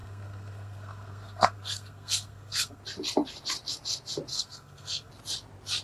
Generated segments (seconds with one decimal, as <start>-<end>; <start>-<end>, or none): 0.0-2.8; 4.3-5.1